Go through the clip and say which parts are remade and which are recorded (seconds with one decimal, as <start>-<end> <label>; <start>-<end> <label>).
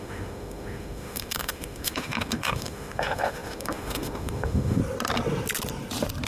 0.0-4.8 remade; 4.8-6.3 recorded